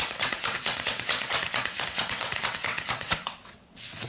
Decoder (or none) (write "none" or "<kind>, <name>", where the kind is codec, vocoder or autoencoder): vocoder, WaveNeXt